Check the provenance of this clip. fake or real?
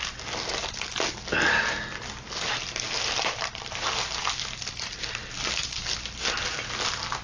real